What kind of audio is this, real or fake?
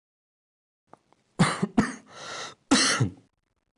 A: real